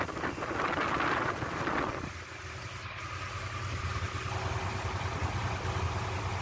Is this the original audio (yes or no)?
yes